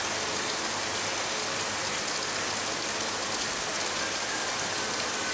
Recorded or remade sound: recorded